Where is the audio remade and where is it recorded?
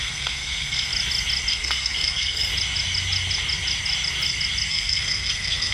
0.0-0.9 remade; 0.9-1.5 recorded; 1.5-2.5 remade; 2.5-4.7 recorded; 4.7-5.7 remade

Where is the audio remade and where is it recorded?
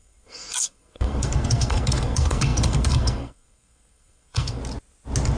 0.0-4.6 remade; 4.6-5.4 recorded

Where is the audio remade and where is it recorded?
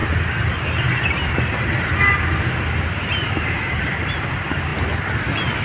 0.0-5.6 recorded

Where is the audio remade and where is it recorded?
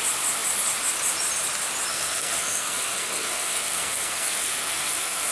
0.0-1.9 recorded; 1.9-5.3 remade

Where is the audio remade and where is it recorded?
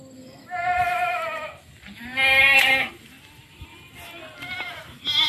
0.0-5.3 recorded